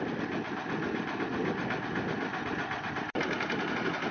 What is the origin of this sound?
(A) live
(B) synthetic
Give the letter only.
A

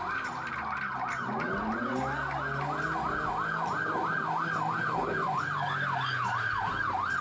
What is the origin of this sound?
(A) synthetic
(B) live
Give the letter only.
B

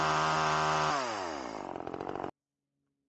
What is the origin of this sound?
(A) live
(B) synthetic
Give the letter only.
A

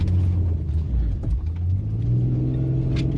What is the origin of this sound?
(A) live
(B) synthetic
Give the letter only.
A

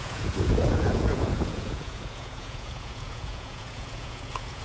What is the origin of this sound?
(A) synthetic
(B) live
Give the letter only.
A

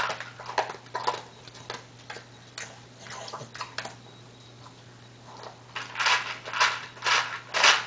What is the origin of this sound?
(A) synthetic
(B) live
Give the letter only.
B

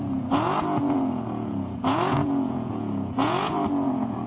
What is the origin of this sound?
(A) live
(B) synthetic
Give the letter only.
B